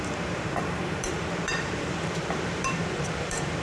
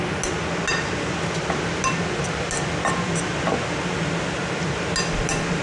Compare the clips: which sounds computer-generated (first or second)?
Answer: first